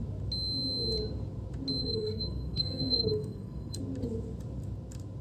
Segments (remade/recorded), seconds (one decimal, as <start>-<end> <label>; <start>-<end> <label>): 0.0-1.8 recorded; 1.8-3.8 remade; 3.8-5.2 recorded